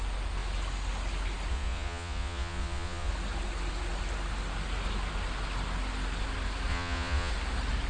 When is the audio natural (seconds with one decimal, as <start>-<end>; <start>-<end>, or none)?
0.0-1.5; 3.1-6.7; 7.3-7.9